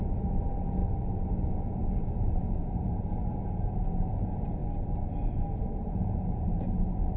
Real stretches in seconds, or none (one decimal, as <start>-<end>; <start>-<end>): 0.8-2.2; 4.6-5.6